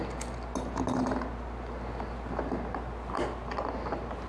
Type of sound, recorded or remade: recorded